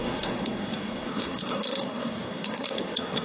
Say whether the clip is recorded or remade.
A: remade